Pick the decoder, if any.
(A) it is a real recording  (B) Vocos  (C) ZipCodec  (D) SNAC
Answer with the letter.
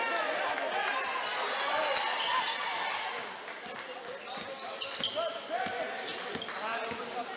A